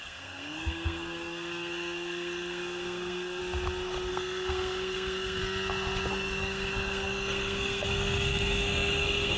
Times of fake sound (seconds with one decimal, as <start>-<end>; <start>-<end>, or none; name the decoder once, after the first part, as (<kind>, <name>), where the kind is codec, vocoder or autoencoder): 0.0-3.4 (codec, SNAC); 4.1-5.4; 6.1-9.4